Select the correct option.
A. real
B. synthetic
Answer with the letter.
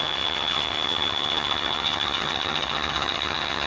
B